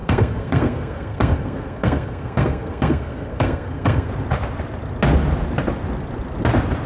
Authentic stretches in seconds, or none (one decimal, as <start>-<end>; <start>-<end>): 4.1-6.9